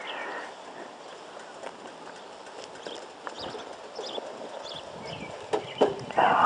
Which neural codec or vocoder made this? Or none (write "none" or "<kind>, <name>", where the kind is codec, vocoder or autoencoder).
none